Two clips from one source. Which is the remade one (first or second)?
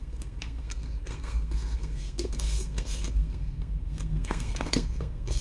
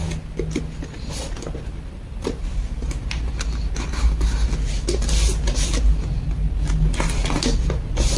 first